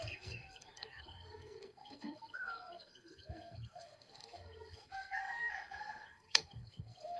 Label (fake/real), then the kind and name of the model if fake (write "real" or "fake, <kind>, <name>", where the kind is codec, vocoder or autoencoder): fake, codec, SNAC